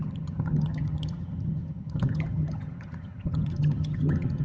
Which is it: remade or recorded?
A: remade